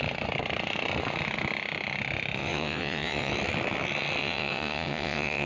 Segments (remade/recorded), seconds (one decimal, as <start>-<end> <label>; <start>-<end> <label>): 0.0-2.4 recorded; 2.4-3.3 remade; 3.3-4.2 recorded; 4.2-5.5 remade